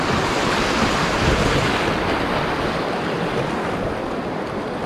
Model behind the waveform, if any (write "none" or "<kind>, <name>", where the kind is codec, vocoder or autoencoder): none